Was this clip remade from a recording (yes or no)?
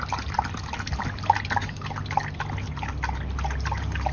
no